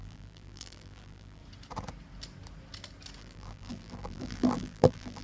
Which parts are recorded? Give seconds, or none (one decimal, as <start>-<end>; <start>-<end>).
1.4-3.2